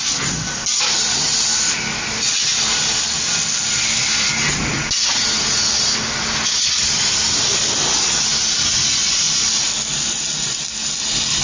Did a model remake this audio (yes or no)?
no